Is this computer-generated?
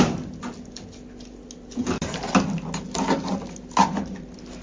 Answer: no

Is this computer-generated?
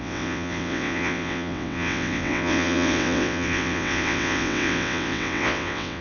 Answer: yes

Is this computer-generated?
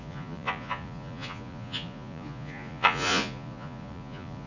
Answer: yes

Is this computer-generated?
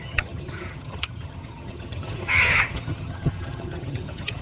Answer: yes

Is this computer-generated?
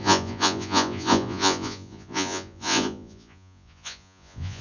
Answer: yes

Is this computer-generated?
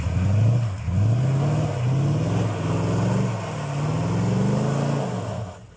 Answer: no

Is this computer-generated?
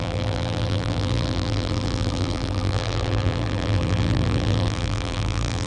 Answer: yes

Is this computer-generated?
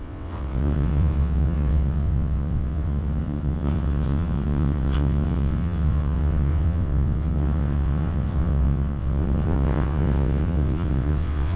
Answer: yes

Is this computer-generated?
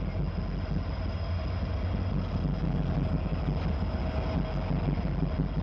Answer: no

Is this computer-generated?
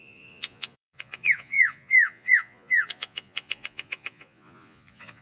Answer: yes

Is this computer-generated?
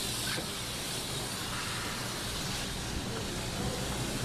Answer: no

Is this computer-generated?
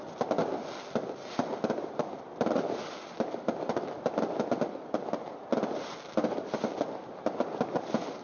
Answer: no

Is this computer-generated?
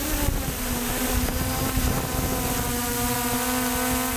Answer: no